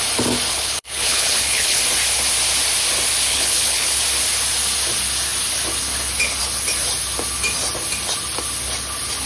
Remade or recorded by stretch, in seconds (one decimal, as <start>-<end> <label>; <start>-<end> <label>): 0.0-0.5 recorded; 0.5-1.8 remade; 1.8-3.3 recorded; 3.3-4.0 remade; 4.0-9.3 recorded